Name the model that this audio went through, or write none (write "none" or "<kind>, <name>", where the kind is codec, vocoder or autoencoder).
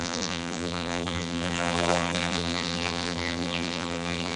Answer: vocoder, BigVGAN v2